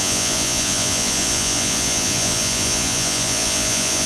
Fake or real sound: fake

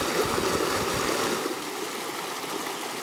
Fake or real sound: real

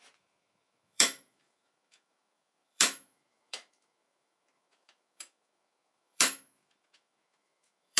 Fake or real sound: fake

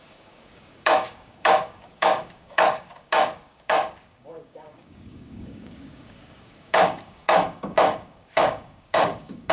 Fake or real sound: fake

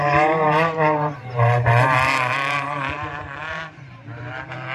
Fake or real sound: fake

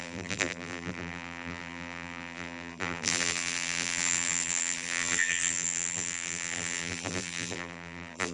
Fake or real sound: fake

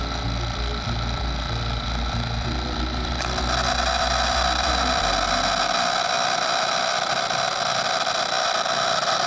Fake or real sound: real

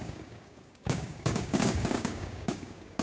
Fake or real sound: fake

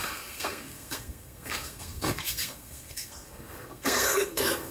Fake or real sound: fake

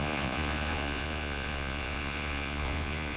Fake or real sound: fake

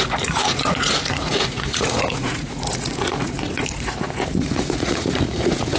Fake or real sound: fake